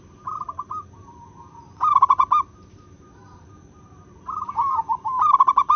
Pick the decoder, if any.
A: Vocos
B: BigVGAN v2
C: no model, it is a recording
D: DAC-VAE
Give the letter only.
B